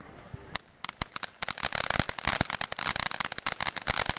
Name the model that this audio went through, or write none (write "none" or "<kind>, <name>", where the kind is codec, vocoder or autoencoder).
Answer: none